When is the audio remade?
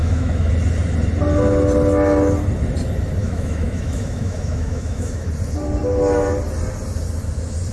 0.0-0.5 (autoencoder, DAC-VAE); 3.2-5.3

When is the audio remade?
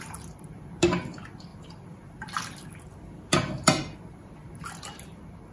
1.5-4.3 (vocoder, BigVGAN v2)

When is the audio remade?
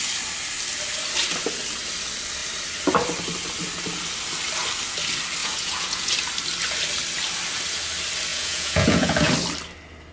5.4-6.1 (vocoder, Vocos); 8.3-9.3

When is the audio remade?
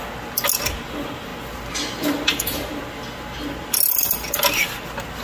none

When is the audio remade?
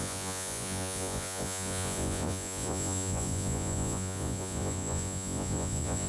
0.0-6.1 (vocoder, Vocos)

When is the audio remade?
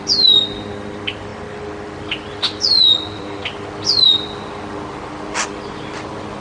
none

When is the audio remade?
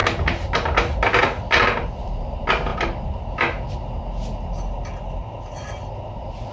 none